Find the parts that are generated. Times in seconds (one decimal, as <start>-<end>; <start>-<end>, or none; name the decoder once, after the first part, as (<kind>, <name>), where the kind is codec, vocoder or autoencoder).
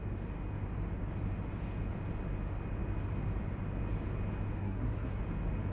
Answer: 4.6-5.2 (codec, SNAC)